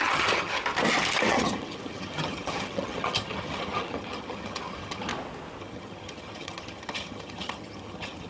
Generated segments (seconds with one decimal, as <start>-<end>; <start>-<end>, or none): 0.0-0.6; 1.3-5.1; 5.6-8.3